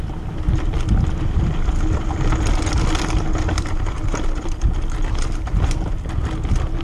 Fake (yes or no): no